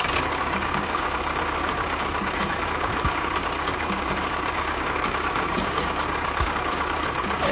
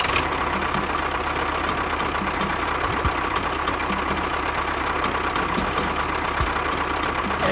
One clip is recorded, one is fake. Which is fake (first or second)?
first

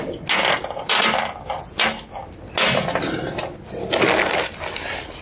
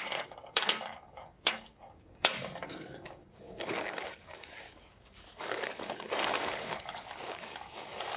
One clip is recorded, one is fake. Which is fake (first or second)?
second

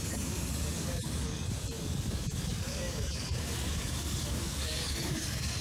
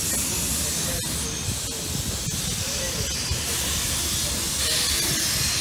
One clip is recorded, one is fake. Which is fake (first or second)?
first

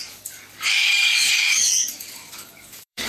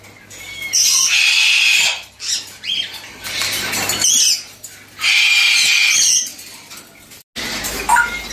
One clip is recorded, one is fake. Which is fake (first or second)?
first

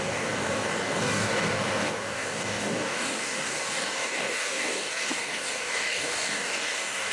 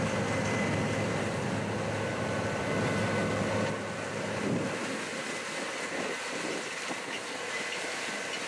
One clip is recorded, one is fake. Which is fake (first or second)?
first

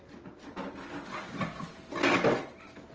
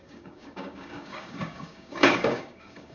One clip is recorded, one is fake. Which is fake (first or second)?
second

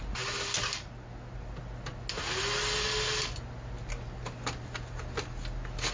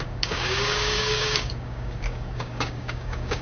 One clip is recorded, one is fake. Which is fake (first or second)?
second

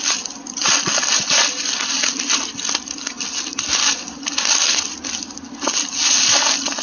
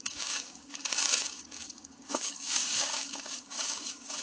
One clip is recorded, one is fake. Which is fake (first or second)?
second